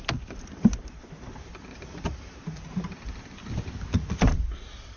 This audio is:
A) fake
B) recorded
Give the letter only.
A